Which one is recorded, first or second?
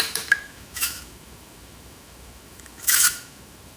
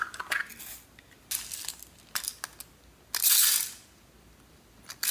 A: second